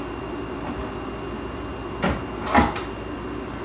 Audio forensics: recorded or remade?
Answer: recorded